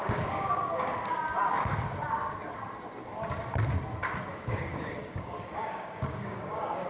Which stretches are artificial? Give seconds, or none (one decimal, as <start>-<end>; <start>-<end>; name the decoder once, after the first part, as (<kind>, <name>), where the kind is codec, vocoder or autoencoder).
0.0-1.2 (codec, DAC); 4.3-6.9